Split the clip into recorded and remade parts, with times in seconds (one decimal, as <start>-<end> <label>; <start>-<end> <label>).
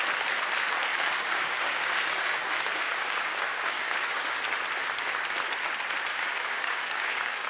0.0-0.9 recorded; 0.9-4.4 remade; 4.4-6.1 recorded; 6.1-7.5 remade